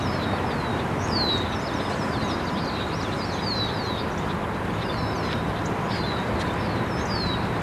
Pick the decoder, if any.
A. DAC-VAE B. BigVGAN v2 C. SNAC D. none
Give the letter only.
D